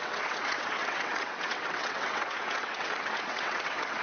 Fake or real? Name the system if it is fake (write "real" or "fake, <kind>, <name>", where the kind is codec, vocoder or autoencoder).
fake, vocoder, WaveNeXt